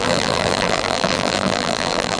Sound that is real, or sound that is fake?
fake